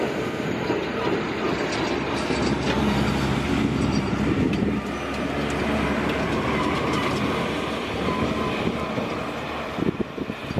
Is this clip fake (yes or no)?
no